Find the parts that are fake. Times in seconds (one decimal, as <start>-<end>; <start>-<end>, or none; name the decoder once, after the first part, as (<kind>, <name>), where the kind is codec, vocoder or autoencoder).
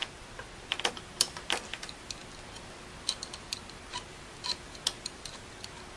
none